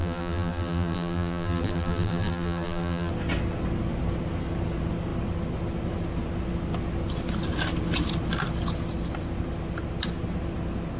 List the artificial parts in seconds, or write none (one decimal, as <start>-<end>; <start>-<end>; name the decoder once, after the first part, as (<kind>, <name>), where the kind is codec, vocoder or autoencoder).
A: 0.0-3.1 (vocoder, BigVGAN v2)